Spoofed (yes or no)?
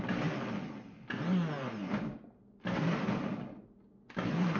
no